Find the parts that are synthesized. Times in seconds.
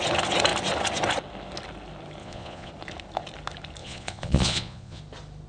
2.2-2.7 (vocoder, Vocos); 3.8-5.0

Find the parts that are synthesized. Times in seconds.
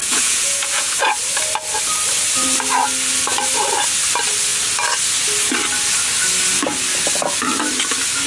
0.0-1.0 (vocoder, Vocos)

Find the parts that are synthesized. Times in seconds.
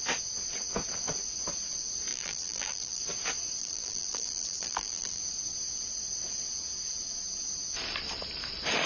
2.1-3.0 (vocoder, BigVGAN v2); 3.6-5.2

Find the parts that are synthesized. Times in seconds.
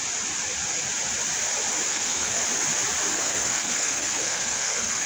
1.9-2.4 (codec, SNAC); 3.1-5.1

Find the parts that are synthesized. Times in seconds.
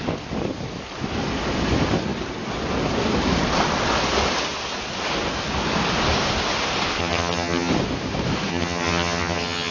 7.0-7.7 (vocoder, HiFi-GAN); 8.5-9.7